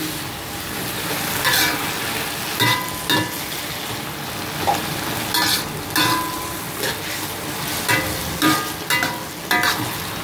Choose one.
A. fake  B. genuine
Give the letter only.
B